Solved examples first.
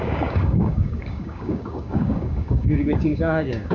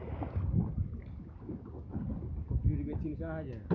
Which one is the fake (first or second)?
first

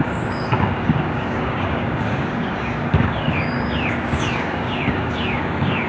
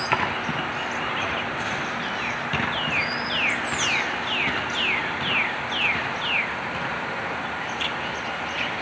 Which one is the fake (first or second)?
first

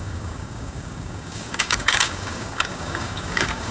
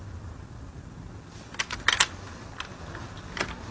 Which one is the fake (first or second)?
first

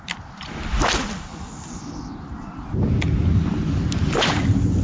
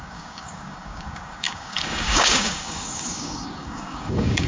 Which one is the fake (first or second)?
second